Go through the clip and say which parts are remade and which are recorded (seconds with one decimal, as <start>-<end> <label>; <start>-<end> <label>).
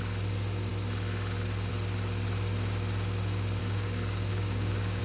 0.0-3.6 recorded; 3.6-5.0 remade